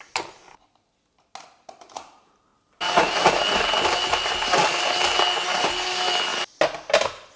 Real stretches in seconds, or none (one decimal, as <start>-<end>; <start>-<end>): 0.0-7.4